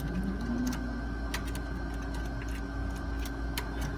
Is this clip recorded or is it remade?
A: recorded